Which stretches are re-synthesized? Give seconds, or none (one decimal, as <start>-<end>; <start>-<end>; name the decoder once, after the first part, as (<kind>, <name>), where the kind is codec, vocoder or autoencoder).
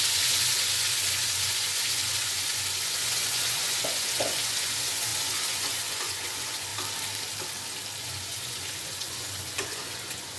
0.0-6.7 (vocoder, Vocos); 8.0-10.4